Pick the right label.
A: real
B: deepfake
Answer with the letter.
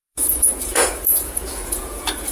B